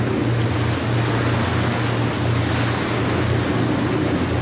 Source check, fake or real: real